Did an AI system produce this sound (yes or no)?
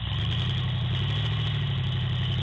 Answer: no